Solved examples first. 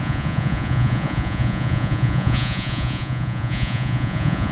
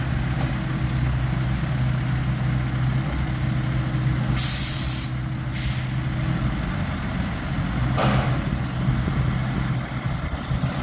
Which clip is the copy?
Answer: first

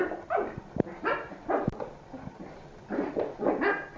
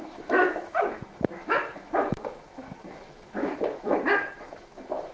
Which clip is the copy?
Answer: second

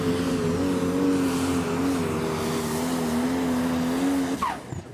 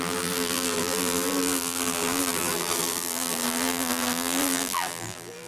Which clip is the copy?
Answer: second